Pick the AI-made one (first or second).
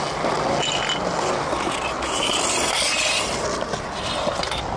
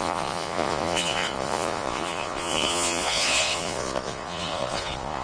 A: second